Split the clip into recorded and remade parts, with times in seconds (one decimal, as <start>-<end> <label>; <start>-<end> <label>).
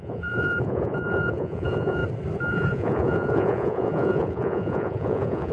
0.0-2.0 remade; 2.0-2.5 recorded; 2.5-5.5 remade